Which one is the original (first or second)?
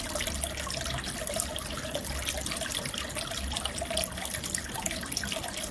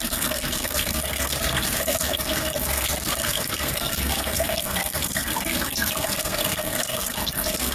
first